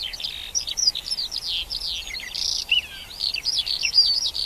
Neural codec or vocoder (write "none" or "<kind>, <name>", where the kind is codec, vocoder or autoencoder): none